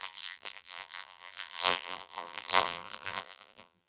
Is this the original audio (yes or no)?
no